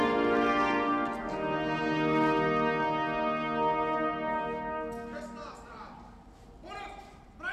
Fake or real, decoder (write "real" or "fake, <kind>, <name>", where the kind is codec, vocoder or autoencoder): fake, vocoder, BigVGAN v2